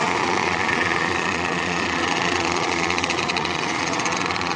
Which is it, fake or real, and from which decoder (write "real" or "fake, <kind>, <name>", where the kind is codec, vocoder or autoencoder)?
fake, vocoder, Vocos